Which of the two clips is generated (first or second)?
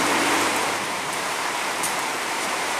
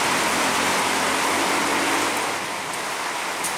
first